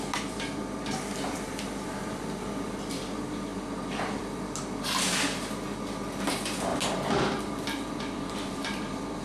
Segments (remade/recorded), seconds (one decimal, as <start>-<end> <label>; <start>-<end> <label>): 0.0-3.5 remade; 3.5-6.3 recorded; 6.3-9.2 remade